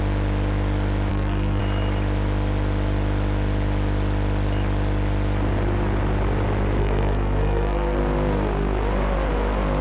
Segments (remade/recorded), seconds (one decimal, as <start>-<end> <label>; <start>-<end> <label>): 0.0-1.1 recorded; 1.1-1.6 remade; 1.6-6.8 recorded; 6.8-8.0 remade; 8.0-9.8 recorded